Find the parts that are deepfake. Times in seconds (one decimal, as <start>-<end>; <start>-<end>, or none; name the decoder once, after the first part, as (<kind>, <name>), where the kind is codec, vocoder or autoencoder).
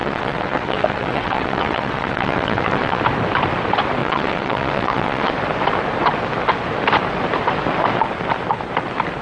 0.0-3.0 (vocoder, WaveNeXt); 4.0-5.3